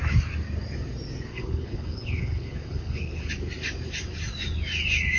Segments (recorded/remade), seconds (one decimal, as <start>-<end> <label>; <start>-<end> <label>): 0.0-1.3 recorded; 1.3-3.3 remade; 3.3-5.2 recorded